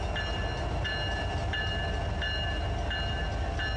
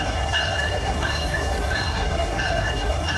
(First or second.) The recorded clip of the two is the first